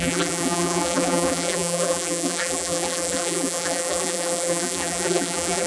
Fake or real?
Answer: fake